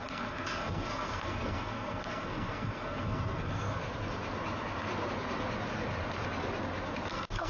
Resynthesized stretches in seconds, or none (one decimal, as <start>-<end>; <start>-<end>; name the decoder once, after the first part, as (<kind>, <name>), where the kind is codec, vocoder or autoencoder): 0.0-3.8 (codec, SNAC); 7.1-7.5